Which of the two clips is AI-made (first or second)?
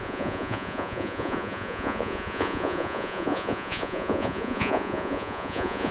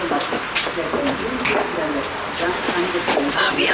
first